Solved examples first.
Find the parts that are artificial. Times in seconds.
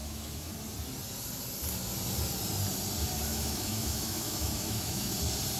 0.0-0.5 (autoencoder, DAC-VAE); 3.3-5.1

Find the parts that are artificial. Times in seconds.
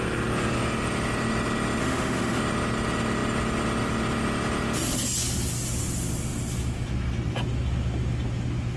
1.8-2.4 (autoencoder, DAC-VAE)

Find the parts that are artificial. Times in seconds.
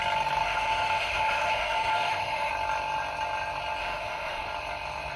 0.4-2.5 (autoencoder, DAC-VAE); 3.8-4.5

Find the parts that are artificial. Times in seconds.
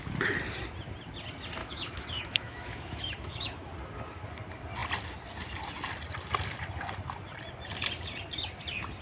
1.6-3.7 (autoencoder, DAC-VAE)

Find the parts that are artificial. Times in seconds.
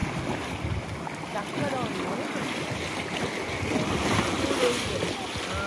none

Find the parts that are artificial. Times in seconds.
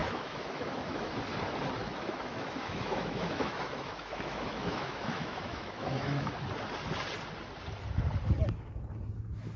0.0-1.2 (autoencoder, DAC-VAE); 1.8-6.3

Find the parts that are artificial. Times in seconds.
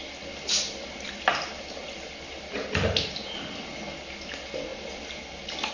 none